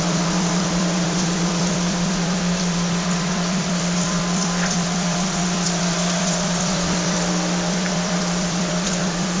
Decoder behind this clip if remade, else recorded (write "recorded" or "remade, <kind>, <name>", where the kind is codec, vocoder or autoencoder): remade, vocoder, BigVGAN v2